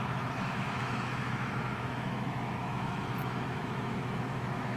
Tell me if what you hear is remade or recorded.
remade